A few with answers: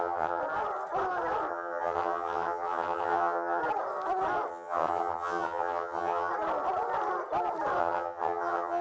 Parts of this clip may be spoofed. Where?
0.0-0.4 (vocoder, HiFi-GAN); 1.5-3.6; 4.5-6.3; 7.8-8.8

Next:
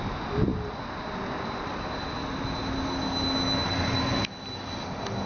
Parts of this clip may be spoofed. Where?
none